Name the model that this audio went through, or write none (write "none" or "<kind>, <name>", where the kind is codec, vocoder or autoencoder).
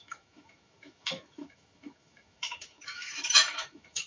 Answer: autoencoder, DAC-VAE